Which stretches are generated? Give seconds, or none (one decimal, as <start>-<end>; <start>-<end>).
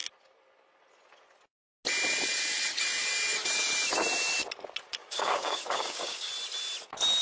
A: 5.0-6.3